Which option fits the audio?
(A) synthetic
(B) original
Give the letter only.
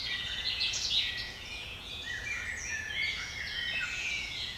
A